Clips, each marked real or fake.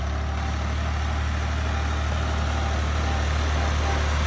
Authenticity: real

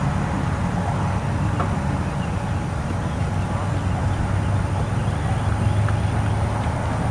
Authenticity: real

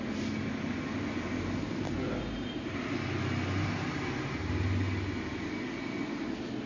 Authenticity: real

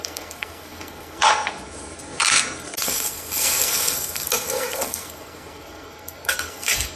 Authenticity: fake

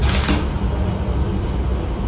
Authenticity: real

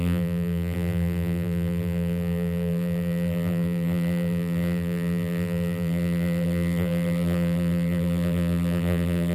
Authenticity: fake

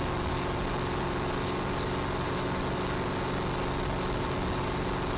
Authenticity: real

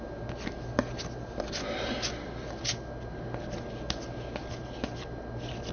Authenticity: real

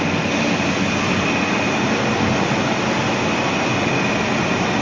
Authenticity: real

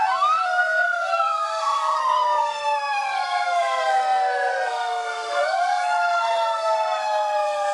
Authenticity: fake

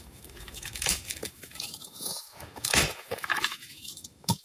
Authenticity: fake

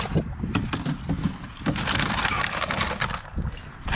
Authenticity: real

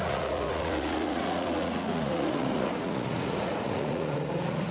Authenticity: fake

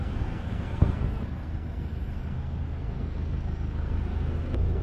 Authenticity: fake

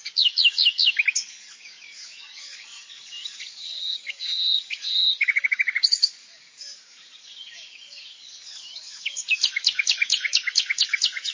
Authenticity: fake